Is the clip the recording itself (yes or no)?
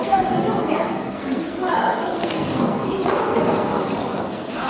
no